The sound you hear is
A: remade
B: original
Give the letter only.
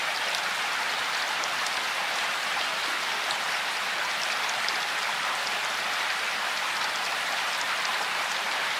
B